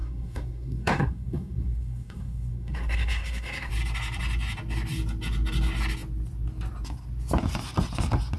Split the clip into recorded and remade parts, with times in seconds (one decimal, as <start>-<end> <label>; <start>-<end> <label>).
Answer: 0.0-3.7 remade; 3.7-8.4 recorded